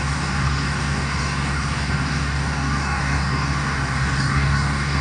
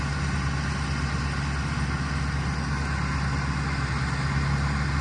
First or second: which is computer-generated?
first